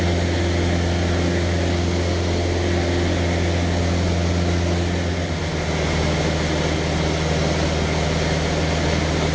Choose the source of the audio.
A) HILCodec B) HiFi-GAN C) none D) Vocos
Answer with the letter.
C